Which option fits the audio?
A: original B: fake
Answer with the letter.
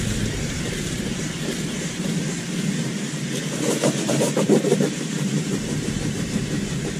B